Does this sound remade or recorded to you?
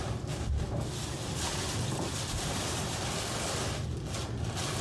recorded